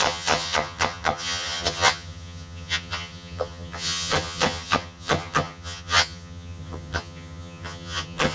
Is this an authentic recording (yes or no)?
no